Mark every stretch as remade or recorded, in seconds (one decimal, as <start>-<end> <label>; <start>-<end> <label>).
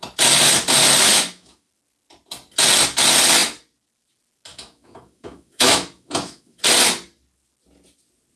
0.0-1.1 recorded; 1.1-1.7 remade; 1.7-4.5 recorded; 4.5-6.6 remade; 6.6-8.4 recorded